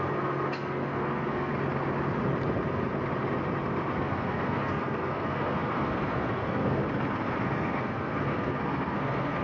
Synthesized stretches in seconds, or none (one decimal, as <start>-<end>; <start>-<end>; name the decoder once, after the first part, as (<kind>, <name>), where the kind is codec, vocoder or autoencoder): 0.0-1.5 (codec, SNAC); 3.9-6.8; 7.4-9.4